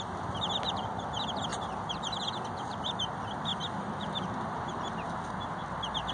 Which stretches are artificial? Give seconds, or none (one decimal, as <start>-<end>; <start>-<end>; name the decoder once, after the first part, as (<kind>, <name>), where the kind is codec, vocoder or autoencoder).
none